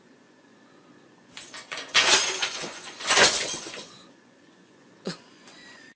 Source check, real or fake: fake